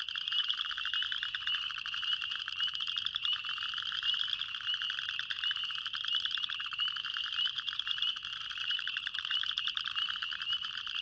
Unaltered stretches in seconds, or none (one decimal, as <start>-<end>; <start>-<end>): 0.4-1.6; 3.4-8.4